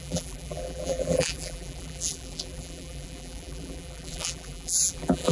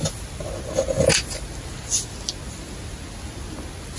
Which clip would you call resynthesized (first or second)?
first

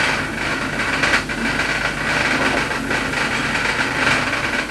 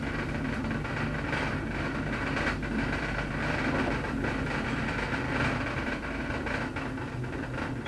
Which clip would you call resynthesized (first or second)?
second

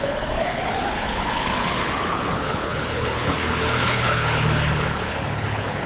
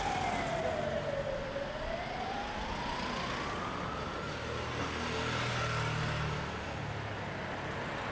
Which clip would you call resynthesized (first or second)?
first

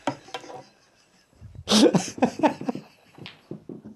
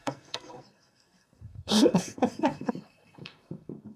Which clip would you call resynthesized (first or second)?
second